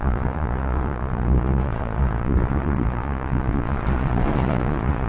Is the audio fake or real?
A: fake